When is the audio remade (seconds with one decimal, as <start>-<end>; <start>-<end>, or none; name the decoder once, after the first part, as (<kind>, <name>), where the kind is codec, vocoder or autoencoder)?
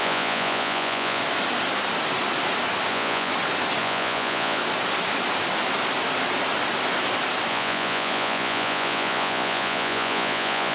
0.0-1.2 (vocoder, Vocos); 2.9-3.3; 3.8-4.6; 7.5-10.7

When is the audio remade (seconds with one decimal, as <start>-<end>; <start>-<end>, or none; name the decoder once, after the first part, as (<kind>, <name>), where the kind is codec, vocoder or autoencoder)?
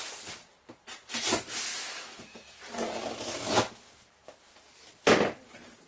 1.7-2.2 (autoencoder, DAC-VAE)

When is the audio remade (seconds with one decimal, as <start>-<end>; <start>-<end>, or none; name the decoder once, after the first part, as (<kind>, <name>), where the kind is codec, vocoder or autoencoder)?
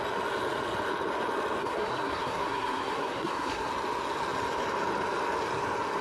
1.6-3.7 (codec, SNAC)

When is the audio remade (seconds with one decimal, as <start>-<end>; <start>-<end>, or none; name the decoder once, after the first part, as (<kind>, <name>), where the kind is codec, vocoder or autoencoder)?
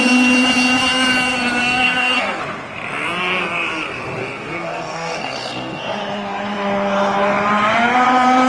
1.6-2.4 (codec, SNAC); 4.2-6.0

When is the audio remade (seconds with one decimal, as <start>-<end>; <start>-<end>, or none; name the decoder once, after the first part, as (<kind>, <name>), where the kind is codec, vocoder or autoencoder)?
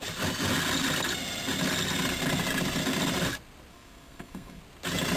3.7-4.6 (codec, SNAC)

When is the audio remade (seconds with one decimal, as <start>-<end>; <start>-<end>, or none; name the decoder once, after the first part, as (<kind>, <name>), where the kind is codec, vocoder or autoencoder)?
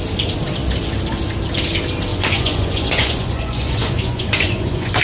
2.1-5.0 (vocoder, Vocos)